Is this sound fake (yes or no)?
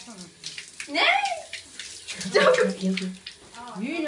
no